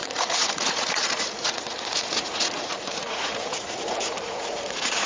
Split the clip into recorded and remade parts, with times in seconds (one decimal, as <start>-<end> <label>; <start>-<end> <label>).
0.0-5.1 remade